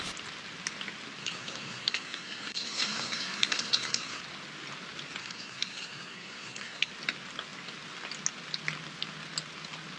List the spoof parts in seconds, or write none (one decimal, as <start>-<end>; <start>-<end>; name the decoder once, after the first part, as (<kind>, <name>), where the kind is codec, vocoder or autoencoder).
1.2-4.2 (codec, SNAC); 5.2-6.9

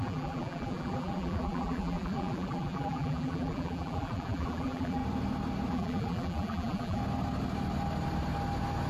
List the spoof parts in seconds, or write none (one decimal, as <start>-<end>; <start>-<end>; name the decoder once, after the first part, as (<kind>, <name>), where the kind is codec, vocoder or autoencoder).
0.0-5.0 (vocoder, BigVGAN v2); 5.7-7.0

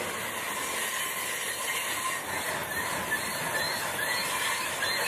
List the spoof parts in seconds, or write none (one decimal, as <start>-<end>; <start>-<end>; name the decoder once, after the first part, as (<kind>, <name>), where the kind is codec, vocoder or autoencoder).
none

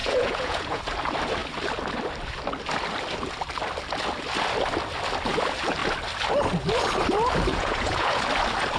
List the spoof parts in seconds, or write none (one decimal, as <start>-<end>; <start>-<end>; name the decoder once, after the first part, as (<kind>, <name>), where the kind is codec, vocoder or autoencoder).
0.0-0.8 (vocoder, Vocos); 7.5-8.2

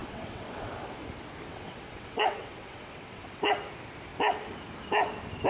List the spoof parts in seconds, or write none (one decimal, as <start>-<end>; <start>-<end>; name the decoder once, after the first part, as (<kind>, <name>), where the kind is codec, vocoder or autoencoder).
0.0-0.7 (vocoder, WaveNeXt); 1.5-3.4

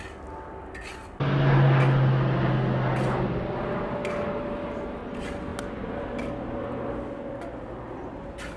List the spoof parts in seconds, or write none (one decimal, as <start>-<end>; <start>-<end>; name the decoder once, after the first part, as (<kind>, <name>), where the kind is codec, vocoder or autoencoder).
none

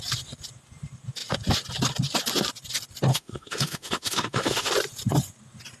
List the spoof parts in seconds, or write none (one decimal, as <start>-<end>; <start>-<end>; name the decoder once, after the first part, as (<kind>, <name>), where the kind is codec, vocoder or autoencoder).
3.1-4.7 (autoencoder, DAC-VAE)

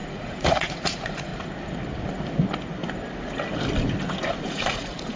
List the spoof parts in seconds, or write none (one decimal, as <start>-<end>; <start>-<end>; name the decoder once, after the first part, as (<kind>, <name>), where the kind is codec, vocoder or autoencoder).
0.0-1.3 (vocoder, Vocos); 4.4-5.2